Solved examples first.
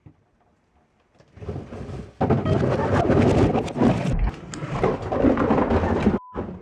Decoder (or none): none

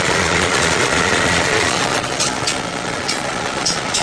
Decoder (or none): vocoder, Vocos